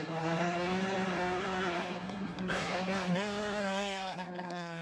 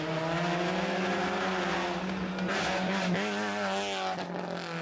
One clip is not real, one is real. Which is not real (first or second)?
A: first